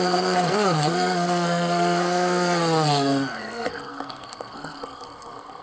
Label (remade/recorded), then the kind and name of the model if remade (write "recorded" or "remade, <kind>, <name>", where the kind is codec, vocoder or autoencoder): remade, codec, SNAC